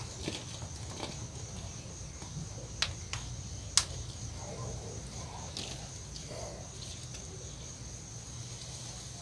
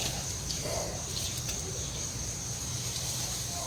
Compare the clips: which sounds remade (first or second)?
second